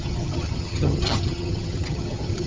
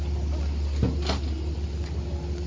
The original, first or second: second